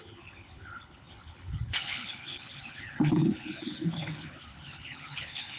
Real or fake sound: fake